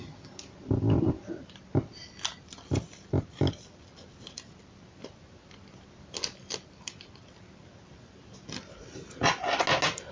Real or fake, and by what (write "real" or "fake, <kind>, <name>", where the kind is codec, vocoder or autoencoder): real